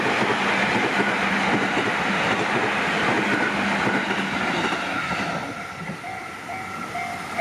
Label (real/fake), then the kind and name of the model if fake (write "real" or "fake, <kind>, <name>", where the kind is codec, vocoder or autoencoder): real